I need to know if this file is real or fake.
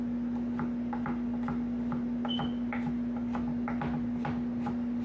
real